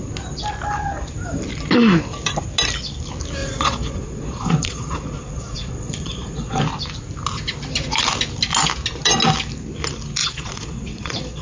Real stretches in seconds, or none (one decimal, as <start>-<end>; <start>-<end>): 0.0-3.4; 6.6-10.2